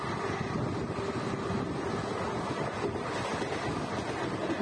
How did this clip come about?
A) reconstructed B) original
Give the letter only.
B